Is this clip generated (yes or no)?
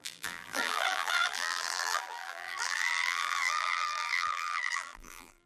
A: yes